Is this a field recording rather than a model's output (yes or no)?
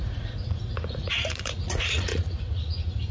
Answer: no